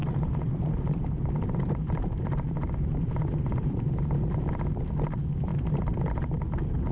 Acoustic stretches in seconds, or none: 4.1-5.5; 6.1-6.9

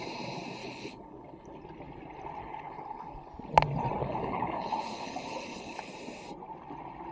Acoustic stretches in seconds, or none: 0.0-0.6; 1.6-2.4; 3.3-4.0; 5.9-7.1

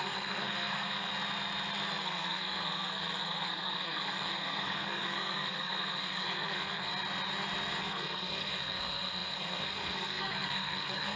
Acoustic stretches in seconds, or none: 1.1-2.0; 6.9-7.8

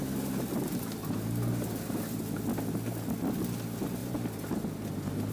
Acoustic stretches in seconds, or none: 0.0-5.3

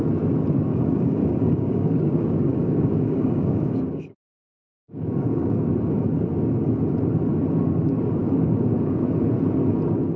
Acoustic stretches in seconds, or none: 0.0-0.7; 4.0-4.7; 5.7-8.2; 9.0-10.2

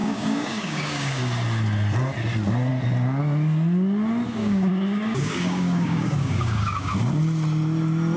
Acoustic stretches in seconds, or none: 1.2-4.4; 6.9-8.2